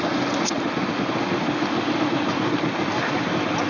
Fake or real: real